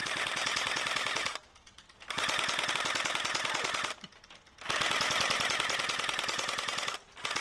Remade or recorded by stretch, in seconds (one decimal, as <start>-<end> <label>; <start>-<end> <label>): 0.0-7.4 recorded

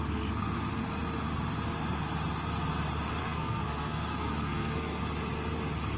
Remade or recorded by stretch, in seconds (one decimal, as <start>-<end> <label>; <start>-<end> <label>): 0.0-3.2 recorded; 3.2-5.0 remade; 5.0-6.0 recorded